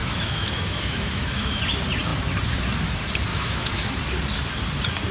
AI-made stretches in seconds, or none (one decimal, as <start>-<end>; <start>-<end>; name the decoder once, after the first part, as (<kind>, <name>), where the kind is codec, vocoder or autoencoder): 0.0-1.6 (autoencoder, DAC-VAE); 3.3-3.9